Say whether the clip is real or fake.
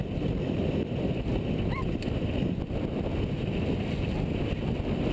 real